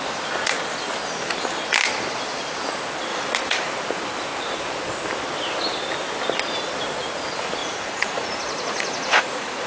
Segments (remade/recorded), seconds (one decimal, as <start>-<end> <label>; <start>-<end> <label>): 0.0-3.1 recorded; 3.1-3.7 remade; 3.7-7.6 recorded; 7.6-9.7 remade